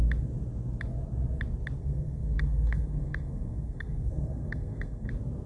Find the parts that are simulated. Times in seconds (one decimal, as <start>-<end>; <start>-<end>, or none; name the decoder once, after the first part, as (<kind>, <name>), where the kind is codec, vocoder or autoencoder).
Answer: 1.8-5.1 (codec, SNAC)

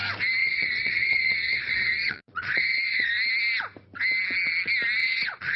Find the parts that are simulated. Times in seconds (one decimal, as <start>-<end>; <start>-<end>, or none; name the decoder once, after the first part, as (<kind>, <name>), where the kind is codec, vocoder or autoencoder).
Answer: 0.4-3.1 (vocoder, Vocos); 5.0-5.6

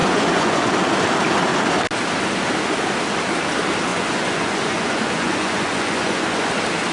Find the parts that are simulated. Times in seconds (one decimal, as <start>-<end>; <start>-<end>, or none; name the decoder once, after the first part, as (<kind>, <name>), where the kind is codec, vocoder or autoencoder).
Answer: 0.0-0.7 (vocoder, Vocos); 3.9-6.5